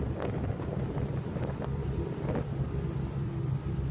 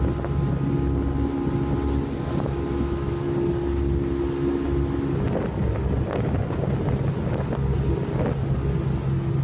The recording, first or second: second